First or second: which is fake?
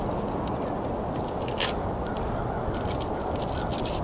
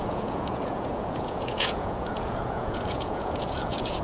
second